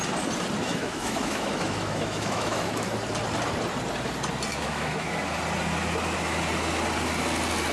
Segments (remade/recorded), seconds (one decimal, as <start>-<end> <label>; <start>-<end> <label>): 0.0-0.6 recorded; 0.6-2.9 remade; 2.9-4.5 recorded; 4.5-5.2 remade; 5.2-7.7 recorded